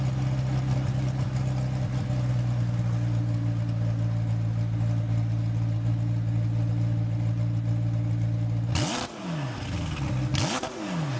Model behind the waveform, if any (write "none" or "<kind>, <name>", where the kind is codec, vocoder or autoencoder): none